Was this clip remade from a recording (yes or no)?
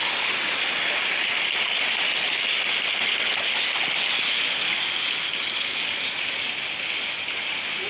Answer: no